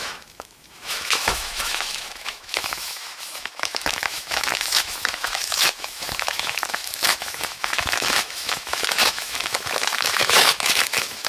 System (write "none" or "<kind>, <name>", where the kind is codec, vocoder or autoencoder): autoencoder, DAC-VAE